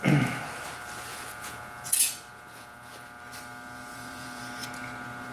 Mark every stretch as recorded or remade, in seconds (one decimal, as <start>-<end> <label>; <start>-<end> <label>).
0.0-1.1 recorded; 1.1-2.9 remade; 2.9-3.9 recorded; 3.9-4.4 remade; 4.4-5.3 recorded